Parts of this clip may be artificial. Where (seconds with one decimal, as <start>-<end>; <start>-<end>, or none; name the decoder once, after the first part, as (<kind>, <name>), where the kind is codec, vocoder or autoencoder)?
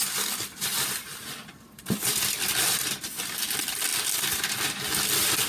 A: 0.7-2.2 (vocoder, BigVGAN v2)